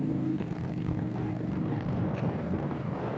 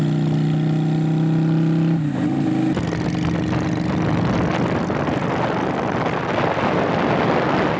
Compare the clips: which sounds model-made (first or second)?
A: first